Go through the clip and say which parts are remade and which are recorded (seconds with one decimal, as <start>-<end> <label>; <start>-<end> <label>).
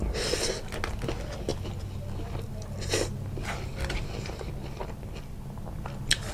0.0-6.3 recorded